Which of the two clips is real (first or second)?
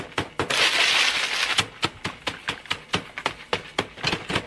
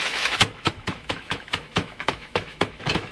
first